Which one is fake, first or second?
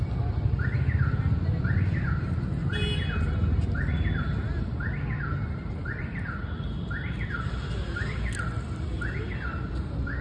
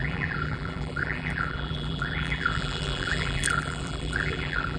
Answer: second